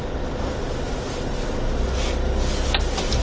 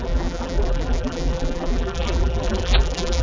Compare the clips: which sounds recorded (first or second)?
first